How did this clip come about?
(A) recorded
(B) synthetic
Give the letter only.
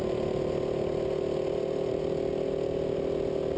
A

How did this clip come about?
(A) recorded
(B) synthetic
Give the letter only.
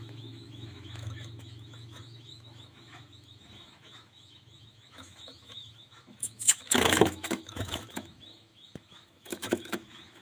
B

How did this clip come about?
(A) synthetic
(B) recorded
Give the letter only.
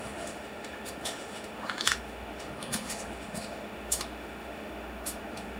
A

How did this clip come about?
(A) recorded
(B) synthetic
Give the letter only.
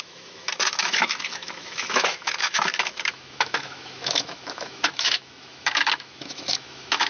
B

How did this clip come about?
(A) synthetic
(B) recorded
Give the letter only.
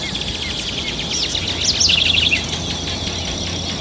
B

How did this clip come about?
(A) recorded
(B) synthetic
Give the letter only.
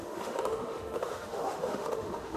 B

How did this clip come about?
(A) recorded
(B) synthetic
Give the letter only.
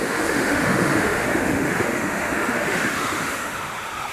B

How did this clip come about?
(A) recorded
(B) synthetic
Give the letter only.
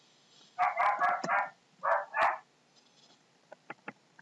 A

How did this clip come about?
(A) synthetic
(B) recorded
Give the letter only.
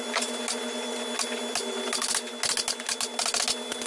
B